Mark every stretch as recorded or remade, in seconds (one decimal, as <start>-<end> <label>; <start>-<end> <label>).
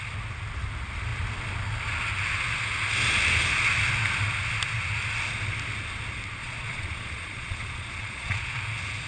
0.0-6.4 recorded; 6.4-8.6 remade; 8.6-9.1 recorded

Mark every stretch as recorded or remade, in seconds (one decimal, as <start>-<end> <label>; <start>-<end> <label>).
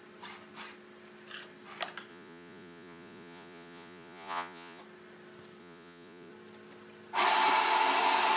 0.0-2.1 recorded; 2.1-4.8 remade; 4.8-5.6 recorded; 5.6-6.3 remade; 6.3-8.4 recorded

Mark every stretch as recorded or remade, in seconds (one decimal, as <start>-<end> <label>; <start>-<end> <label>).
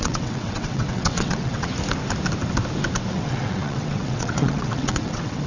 0.0-1.7 remade; 1.7-3.1 recorded; 3.1-5.5 remade